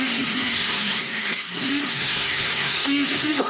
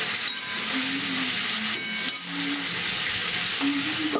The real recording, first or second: second